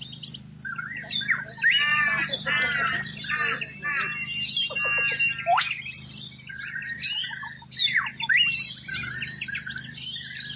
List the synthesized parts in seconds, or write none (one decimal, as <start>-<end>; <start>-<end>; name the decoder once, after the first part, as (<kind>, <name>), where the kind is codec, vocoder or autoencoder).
1.9-3.9 (vocoder, BigVGAN v2)